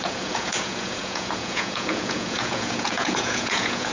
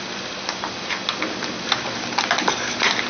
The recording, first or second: second